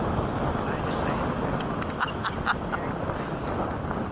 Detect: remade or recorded recorded